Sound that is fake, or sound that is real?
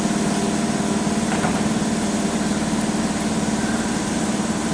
real